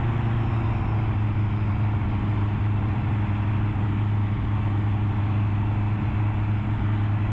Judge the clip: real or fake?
real